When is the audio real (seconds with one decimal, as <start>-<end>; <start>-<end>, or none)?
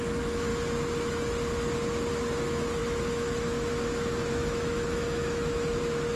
0.5-2.4